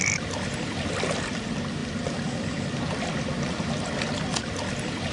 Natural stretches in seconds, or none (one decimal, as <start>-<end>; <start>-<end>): 0.0-5.1